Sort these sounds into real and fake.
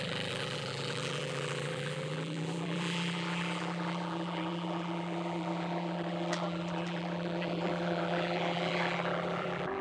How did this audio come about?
fake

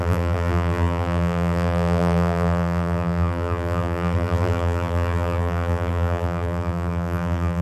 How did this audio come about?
fake